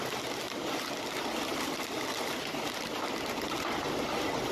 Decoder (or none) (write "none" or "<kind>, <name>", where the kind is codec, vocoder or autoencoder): none